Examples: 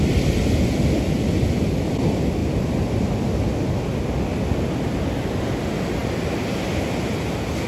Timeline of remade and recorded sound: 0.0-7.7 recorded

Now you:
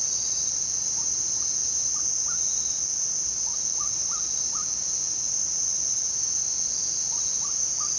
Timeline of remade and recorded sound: 0.0-8.0 recorded